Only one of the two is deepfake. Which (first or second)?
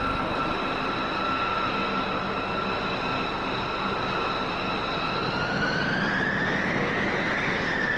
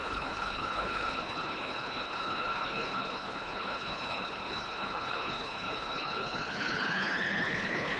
second